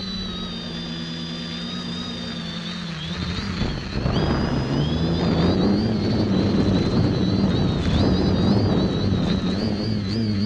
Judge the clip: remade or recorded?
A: recorded